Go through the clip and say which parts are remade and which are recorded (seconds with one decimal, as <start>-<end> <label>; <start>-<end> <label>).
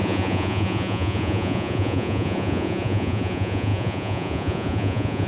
0.0-5.3 remade